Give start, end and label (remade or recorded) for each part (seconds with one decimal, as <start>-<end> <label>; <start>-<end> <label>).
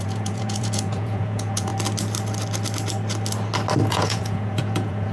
0.0-1.7 remade; 1.7-3.9 recorded; 3.9-5.1 remade